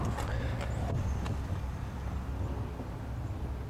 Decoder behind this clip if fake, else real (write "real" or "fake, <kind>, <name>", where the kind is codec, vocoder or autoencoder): real